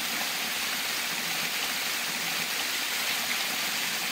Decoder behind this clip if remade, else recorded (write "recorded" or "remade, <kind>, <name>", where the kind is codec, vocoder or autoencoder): recorded